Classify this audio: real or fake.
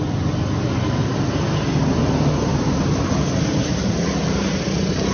real